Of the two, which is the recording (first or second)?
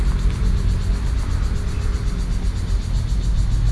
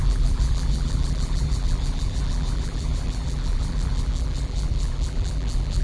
first